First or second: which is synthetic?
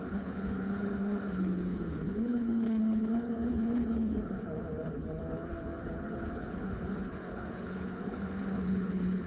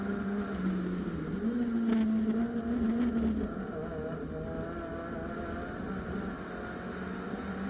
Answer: first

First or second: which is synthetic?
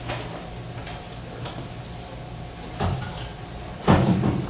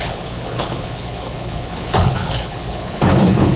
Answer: second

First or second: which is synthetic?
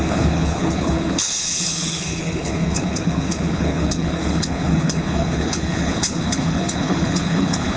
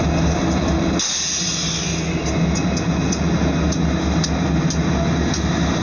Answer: first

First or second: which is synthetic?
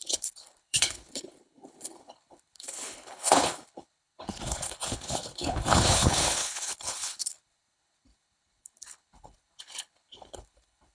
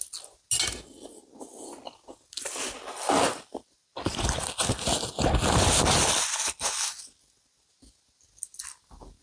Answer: first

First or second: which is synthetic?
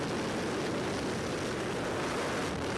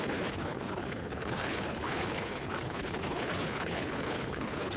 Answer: second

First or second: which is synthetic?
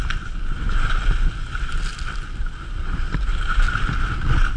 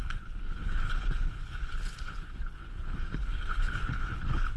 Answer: second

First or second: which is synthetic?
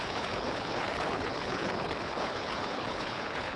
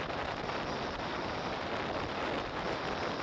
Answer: first